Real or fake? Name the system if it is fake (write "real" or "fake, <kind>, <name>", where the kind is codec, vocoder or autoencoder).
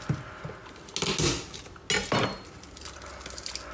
real